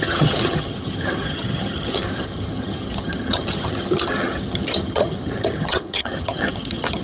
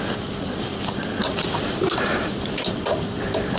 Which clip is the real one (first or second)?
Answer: second